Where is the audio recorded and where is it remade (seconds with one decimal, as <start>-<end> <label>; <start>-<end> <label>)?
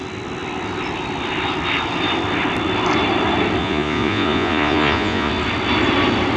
0.0-3.6 recorded; 3.6-5.3 remade; 5.3-6.4 recorded